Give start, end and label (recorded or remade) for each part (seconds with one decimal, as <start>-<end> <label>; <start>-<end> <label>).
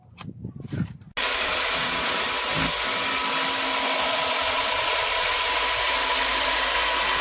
0.0-1.3 recorded; 1.3-2.2 remade; 2.2-4.0 recorded; 4.0-5.5 remade; 5.5-7.2 recorded